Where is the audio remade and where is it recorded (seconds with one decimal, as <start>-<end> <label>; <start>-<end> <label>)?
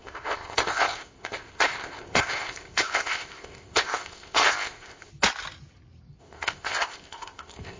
0.0-5.1 remade; 5.1-6.2 recorded; 6.2-7.8 remade